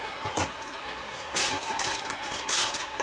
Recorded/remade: remade